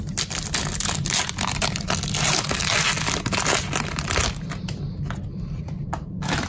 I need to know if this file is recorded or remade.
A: recorded